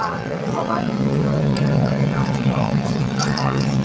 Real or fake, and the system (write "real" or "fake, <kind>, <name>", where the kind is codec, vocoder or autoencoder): fake, vocoder, WaveNeXt